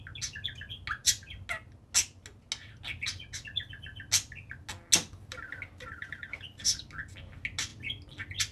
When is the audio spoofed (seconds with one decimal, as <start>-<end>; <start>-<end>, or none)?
5.9-6.6